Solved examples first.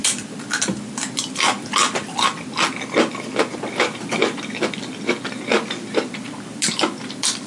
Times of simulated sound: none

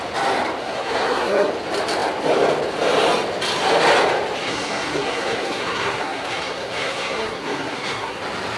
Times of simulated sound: 0.6-1.5 (codec, SNAC); 4.4-8.2

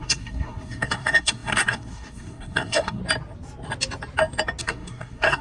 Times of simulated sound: 0.0-3.0 (codec, SNAC); 4.6-5.4

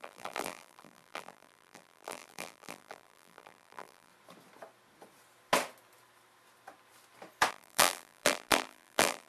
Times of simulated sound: 0.0-4.1 (vocoder, BigVGAN v2); 7.5-9.3

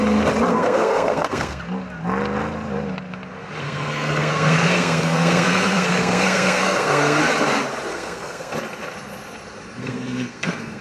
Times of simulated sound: 0.5-1.6 (codec, SNAC); 3.6-7.2; 7.9-8.5; 9.8-10.8

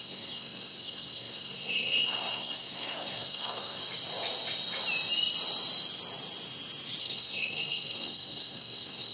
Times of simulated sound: 0.0-3.8 (codec, SNAC); 7.0-9.1

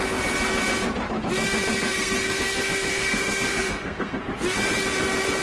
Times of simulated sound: 1.7-4.2 (codec, SNAC)